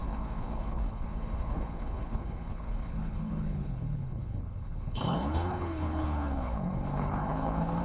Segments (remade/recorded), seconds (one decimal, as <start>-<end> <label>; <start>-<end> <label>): 0.0-7.8 remade